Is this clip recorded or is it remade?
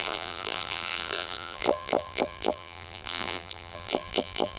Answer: remade